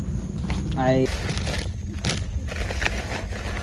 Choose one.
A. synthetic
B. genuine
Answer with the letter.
B